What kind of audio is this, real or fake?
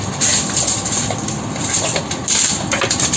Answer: real